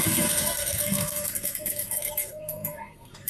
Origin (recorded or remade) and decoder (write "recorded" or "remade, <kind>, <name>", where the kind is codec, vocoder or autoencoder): remade, codec, SNAC